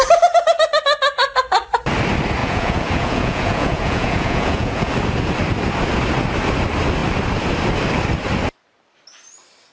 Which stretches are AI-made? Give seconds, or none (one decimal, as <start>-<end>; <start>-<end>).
2.4-4.9